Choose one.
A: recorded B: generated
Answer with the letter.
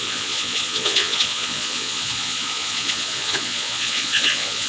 B